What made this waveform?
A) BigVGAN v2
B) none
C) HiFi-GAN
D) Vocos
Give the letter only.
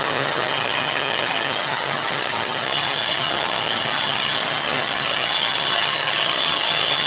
C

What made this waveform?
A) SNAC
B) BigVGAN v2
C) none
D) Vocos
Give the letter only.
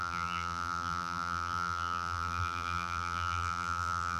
B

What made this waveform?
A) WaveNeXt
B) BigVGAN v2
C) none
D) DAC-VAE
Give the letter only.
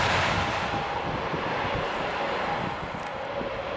C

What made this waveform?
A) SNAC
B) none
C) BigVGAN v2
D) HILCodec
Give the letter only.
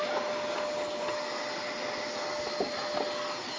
B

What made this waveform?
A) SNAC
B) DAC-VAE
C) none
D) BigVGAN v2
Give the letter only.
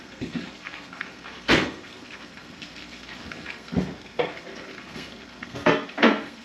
A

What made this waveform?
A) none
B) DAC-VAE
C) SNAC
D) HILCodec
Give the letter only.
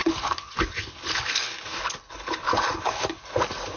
D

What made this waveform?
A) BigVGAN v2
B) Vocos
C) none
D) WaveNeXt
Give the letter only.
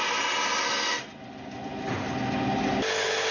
C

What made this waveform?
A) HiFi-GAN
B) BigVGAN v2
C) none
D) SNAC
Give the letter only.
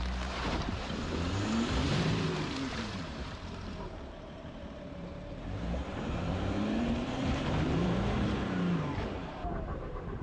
B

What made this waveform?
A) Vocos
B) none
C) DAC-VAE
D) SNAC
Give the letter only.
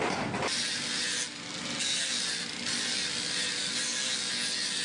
B